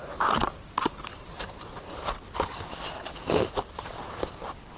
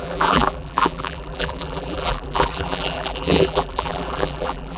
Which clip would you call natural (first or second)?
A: first